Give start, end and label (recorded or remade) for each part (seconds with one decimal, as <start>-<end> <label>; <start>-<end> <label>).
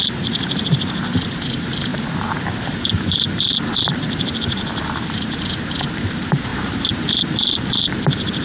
0.0-8.4 remade